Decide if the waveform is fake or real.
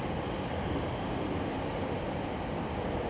real